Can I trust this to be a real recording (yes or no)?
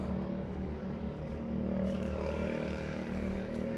no